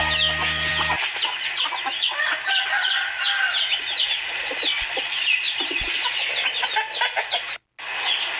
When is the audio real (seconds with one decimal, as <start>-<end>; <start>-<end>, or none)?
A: 0.0-8.4